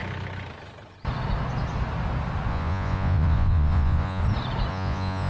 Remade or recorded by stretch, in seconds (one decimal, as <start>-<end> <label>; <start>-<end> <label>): 0.0-2.5 recorded; 2.5-4.2 remade; 4.2-4.7 recorded; 4.7-5.3 remade